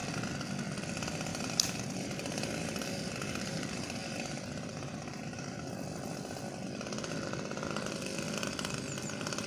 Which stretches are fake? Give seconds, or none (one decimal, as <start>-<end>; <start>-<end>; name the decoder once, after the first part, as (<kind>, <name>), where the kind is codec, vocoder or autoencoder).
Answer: 1.3-5.7 (vocoder, BigVGAN v2)